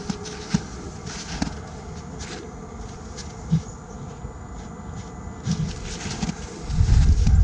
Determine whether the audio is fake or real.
real